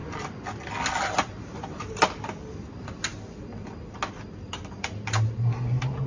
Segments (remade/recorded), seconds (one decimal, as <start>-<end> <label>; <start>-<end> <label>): 0.0-6.1 recorded